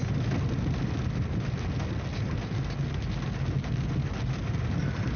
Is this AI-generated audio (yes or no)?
no